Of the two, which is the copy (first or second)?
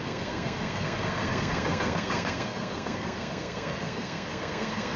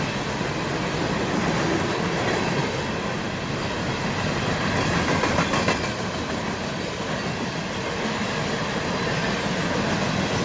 first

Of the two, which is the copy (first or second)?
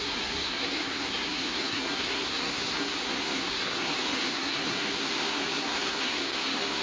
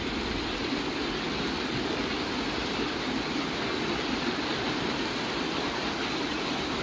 first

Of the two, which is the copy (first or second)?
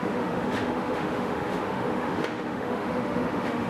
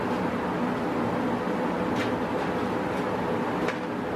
first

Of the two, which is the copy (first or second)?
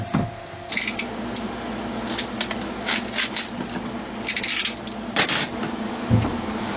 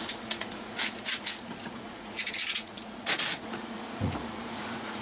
second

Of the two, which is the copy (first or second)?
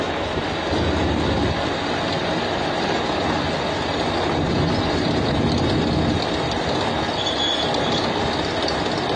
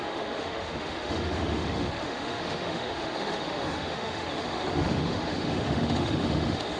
second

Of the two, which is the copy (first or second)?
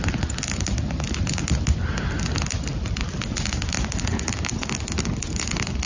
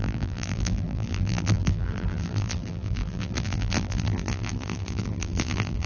second